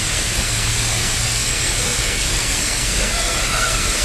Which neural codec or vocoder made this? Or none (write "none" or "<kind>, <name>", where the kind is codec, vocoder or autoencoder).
codec, SNAC